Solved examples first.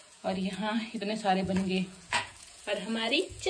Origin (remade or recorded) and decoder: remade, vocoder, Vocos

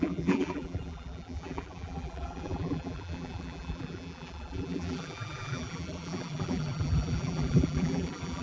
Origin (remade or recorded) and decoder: remade, vocoder, BigVGAN v2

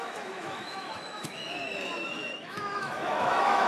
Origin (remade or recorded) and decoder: remade, autoencoder, DAC-VAE